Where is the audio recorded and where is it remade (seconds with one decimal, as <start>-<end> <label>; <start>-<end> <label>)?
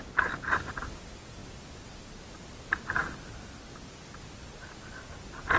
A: 0.0-5.6 recorded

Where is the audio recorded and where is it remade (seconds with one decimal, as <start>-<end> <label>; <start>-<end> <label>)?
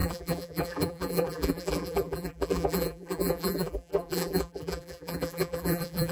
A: 0.0-6.1 remade